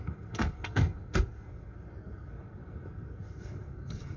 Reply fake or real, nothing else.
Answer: fake